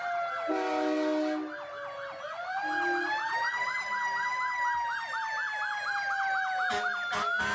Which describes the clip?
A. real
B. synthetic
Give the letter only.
A